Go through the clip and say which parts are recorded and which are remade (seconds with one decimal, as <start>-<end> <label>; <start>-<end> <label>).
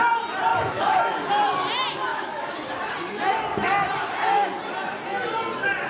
0.0-0.5 recorded; 0.5-1.3 remade; 1.3-2.1 recorded; 2.1-2.9 remade; 2.9-5.9 recorded